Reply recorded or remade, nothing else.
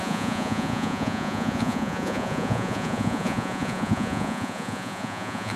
remade